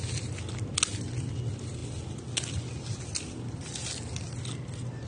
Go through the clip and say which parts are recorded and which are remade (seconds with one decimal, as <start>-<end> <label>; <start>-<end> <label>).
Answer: 0.0-5.1 recorded